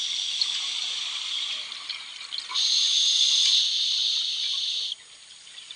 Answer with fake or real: real